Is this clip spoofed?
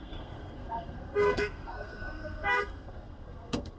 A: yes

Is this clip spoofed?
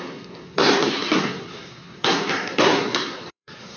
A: yes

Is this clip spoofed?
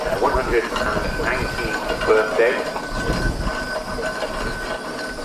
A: no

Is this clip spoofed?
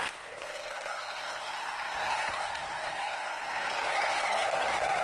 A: yes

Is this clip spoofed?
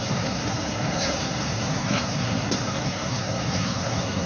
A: yes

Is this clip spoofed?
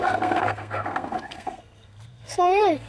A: yes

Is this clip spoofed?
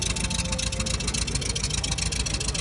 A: no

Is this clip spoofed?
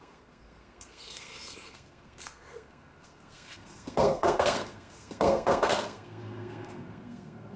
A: yes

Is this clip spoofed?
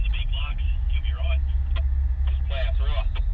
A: no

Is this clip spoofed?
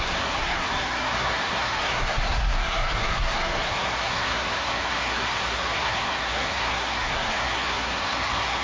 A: yes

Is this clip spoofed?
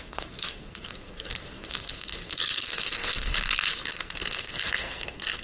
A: yes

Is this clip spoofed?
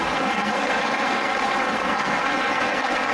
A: yes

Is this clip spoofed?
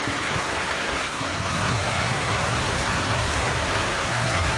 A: yes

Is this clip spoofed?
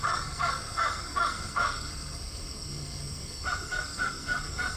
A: yes